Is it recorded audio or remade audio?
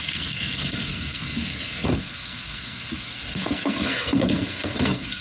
remade